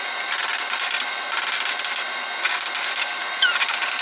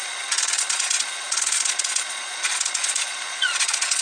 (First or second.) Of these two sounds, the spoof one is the second